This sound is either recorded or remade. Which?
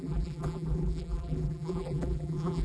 remade